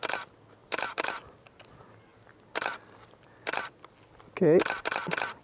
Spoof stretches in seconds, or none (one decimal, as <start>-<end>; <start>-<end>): 0.6-1.3